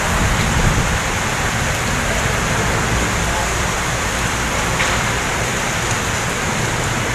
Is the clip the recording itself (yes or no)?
no